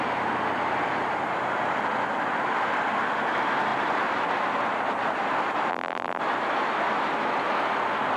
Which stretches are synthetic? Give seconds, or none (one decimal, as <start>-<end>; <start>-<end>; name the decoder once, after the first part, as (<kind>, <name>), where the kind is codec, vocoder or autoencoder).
5.7-6.2 (vocoder, BigVGAN v2)